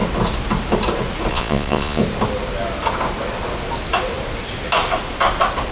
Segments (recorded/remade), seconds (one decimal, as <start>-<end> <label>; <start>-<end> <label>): 0.0-1.3 recorded; 1.3-2.0 remade; 2.0-5.7 recorded